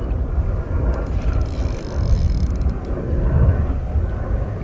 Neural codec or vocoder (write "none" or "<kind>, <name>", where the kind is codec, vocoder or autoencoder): none